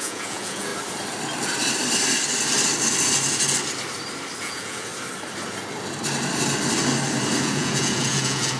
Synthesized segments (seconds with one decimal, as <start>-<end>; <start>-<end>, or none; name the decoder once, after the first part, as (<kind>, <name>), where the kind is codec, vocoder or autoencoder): 0.0-0.7 (vocoder, Vocos); 4.4-4.9; 7.4-8.6